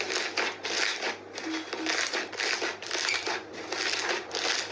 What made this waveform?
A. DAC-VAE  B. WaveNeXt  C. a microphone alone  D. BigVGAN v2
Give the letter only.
C